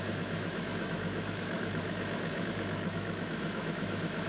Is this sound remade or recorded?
remade